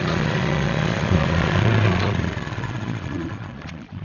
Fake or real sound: fake